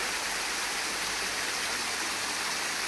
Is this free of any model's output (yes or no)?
no